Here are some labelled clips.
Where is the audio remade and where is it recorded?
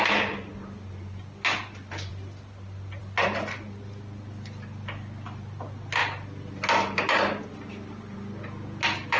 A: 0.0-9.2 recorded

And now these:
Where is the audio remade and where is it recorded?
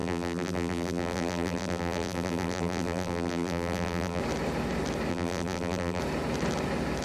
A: 0.0-4.2 remade; 4.2-5.1 recorded; 5.1-6.0 remade; 6.0-7.0 recorded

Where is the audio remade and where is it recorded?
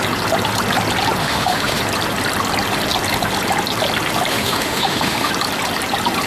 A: 0.0-1.2 recorded; 1.2-1.8 remade; 1.8-4.3 recorded; 4.3-5.3 remade; 5.3-6.3 recorded